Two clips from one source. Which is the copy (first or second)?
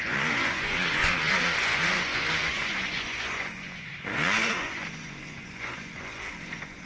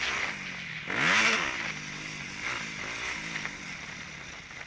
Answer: first